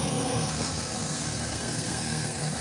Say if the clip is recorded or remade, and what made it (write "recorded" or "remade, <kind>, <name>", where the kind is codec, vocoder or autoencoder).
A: remade, codec, SNAC